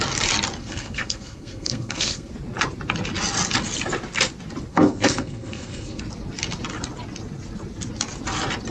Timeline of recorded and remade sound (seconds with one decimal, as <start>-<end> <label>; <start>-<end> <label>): 0.0-0.6 recorded; 0.6-2.3 remade; 2.3-4.7 recorded; 4.7-6.0 remade; 6.0-8.7 recorded